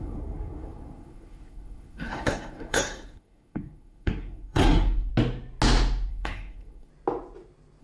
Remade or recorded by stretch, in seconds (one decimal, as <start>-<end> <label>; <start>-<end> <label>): 0.0-5.1 remade; 5.1-6.1 recorded; 6.1-6.9 remade; 6.9-7.8 recorded

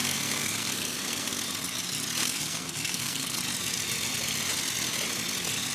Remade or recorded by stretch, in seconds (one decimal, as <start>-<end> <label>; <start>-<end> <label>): 0.0-1.4 remade; 1.4-2.2 recorded; 2.2-3.4 remade; 3.4-5.7 recorded

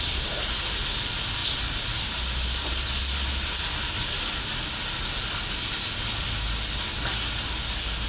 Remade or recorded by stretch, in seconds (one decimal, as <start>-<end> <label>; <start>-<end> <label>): 0.0-8.1 recorded